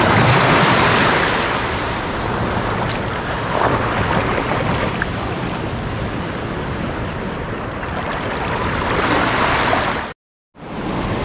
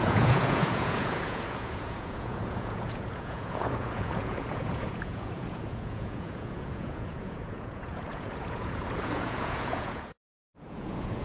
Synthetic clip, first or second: second